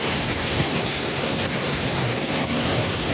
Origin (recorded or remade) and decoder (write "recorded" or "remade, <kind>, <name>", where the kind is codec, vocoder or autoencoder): remade, codec, SNAC